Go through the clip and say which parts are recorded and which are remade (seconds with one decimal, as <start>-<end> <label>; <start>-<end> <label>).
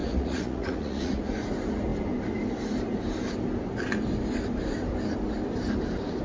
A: 0.0-1.3 remade; 1.3-6.2 recorded